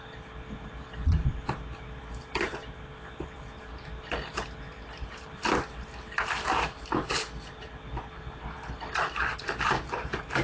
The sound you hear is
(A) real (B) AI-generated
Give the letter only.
A